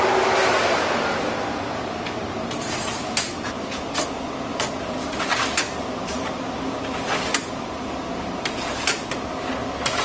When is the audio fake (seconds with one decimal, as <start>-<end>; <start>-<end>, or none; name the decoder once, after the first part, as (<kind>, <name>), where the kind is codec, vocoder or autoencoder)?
4.5-5.2 (vocoder, BigVGAN v2)